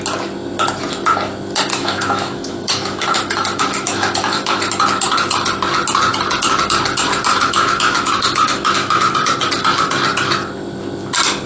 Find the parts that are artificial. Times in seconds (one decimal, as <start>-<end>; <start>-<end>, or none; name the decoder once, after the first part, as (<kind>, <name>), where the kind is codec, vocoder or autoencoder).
1.7-4.7 (autoencoder, DAC-VAE); 7.3-9.1